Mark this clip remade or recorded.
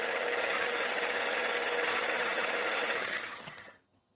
remade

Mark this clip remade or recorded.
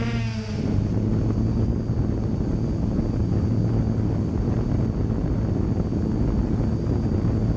recorded